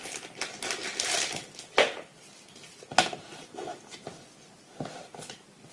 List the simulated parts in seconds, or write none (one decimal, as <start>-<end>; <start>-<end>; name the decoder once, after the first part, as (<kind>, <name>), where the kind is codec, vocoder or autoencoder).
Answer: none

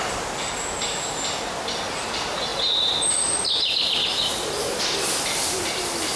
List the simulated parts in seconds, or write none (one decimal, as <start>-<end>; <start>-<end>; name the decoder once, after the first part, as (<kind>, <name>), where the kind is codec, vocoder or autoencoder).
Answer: none

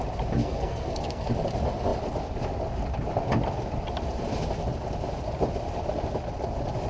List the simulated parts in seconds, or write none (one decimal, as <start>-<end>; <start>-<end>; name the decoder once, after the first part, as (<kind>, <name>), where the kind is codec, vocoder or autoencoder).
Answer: 0.4-1.3 (codec, SNAC)

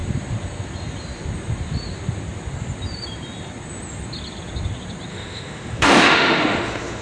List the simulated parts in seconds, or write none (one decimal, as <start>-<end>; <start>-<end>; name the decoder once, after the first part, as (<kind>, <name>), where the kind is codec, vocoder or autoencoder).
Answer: 5.1-7.0 (autoencoder, DAC-VAE)

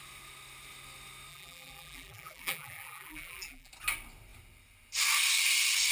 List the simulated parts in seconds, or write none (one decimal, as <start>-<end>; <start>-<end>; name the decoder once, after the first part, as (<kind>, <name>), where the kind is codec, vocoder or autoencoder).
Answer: 1.3-3.7 (vocoder, BigVGAN v2)

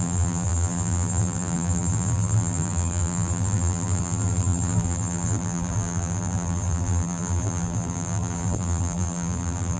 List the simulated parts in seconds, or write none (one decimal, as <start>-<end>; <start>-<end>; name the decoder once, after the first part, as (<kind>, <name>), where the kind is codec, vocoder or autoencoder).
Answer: 0.0-9.8 (vocoder, BigVGAN v2)

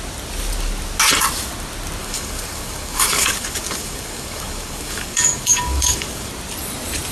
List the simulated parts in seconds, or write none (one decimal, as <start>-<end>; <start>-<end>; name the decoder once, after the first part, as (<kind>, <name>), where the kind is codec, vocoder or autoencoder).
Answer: 2.0-6.3 (codec, DAC)

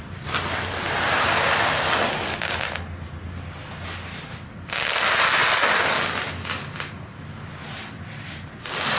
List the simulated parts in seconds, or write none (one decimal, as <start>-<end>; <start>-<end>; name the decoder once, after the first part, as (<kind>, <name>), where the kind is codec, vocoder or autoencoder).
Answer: none